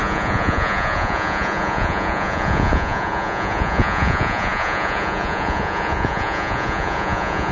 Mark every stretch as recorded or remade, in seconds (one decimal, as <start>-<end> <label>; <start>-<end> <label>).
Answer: 0.0-7.5 remade